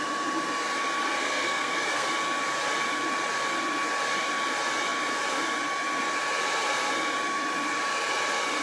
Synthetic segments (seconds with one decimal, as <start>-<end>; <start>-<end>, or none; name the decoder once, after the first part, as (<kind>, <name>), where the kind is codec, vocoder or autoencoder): 1.0-2.1 (codec, SNAC)